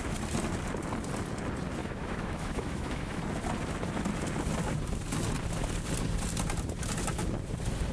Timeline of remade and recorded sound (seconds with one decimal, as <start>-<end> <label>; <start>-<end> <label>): 0.0-1.8 recorded; 1.8-3.2 remade; 3.2-7.9 recorded